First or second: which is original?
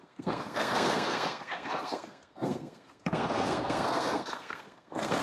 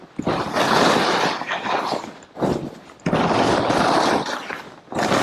second